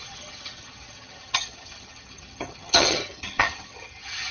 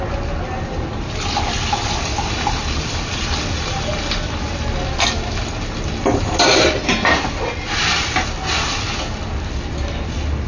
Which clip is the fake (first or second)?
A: first